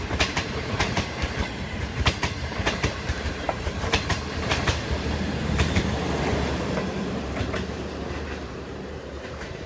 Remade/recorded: remade